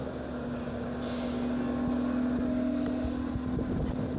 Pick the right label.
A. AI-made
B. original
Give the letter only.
B